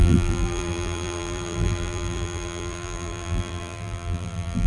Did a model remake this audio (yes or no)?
yes